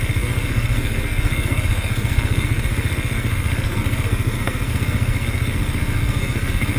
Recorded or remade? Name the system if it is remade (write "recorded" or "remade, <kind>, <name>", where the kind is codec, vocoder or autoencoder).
remade, codec, SNAC